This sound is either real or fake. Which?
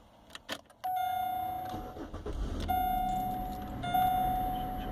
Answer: real